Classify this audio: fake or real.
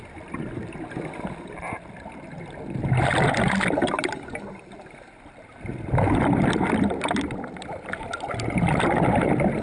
real